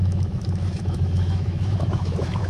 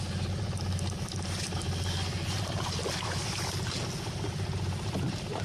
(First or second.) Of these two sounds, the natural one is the second